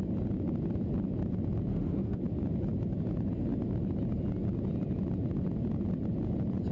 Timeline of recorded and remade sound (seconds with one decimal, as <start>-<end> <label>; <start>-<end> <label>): 0.0-1.7 recorded; 1.7-2.2 remade; 2.2-6.7 recorded